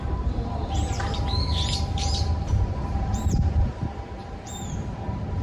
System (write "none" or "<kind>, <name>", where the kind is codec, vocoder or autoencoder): vocoder, BigVGAN v2